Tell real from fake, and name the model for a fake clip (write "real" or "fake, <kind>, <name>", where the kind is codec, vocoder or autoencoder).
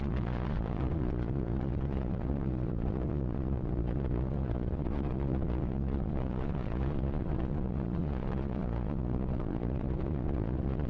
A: fake, vocoder, Vocos